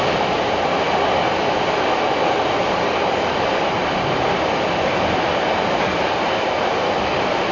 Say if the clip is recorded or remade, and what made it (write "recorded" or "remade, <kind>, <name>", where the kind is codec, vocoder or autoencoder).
recorded